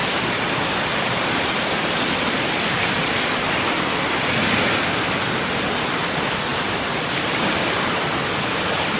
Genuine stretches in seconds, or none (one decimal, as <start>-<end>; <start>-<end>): 3.7-6.5